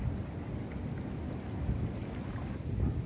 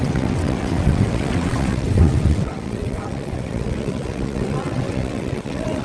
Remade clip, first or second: second